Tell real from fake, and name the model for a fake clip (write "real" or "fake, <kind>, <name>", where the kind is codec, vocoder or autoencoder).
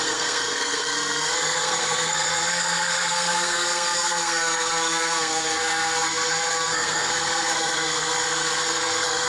fake, codec, SNAC